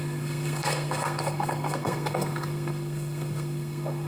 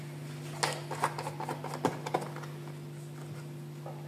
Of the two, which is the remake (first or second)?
first